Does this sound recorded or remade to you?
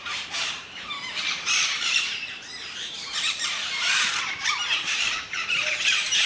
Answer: remade